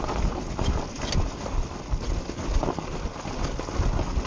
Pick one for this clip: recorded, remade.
recorded